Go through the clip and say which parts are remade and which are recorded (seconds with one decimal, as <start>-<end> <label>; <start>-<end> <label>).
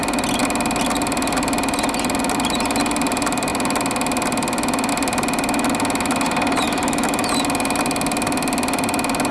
0.0-9.3 recorded